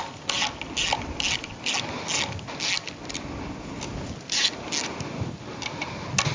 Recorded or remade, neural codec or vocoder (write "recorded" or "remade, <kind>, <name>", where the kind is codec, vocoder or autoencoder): recorded